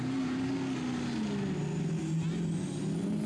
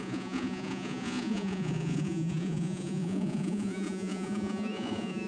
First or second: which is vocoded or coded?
second